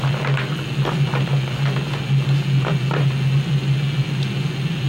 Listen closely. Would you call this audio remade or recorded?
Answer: recorded